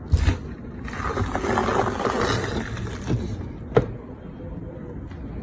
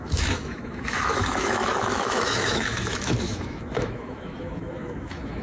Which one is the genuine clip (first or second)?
first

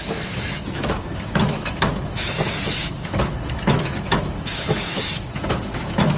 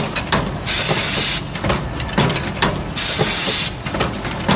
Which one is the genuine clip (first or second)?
second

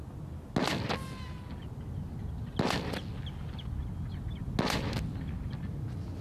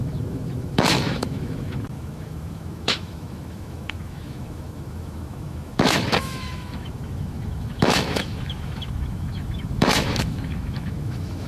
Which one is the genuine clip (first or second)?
first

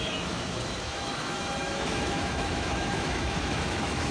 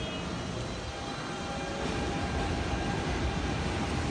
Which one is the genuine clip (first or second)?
second